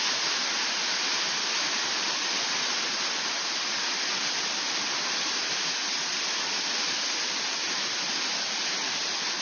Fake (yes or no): no